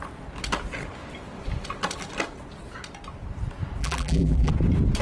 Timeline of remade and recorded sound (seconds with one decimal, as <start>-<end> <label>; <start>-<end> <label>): 0.0-3.8 recorded; 3.8-4.5 remade; 4.5-5.0 recorded